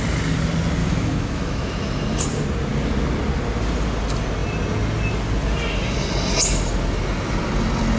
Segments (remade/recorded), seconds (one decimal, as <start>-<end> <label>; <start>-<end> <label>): 0.0-0.8 recorded; 0.8-1.7 remade; 1.7-8.0 recorded